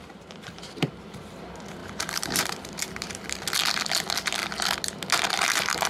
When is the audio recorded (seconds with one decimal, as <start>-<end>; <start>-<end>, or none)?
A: 1.3-1.8; 2.8-5.9